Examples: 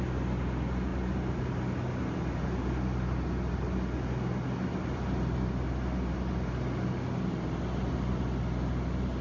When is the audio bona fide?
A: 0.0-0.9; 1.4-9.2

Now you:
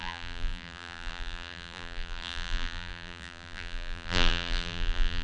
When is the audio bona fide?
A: none

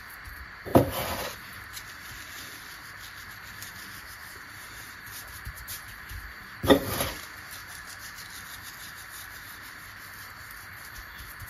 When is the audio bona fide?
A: 0.0-4.2; 6.0-7.6; 8.2-11.5

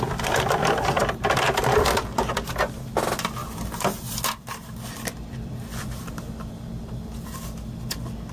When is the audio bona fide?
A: 0.0-3.4; 6.1-8.3

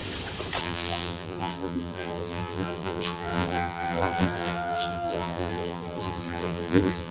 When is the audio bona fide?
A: 0.0-0.6

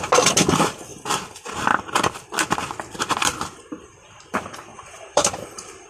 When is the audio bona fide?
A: 0.0-4.7

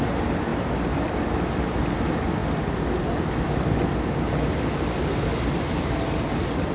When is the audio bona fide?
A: 0.0-6.7

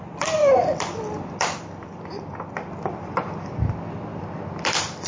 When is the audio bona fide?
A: 0.0-0.4; 2.4-4.1